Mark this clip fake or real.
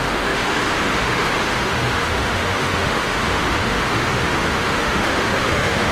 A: fake